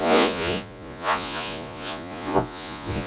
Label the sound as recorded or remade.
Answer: remade